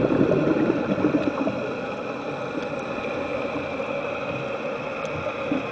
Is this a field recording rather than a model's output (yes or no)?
yes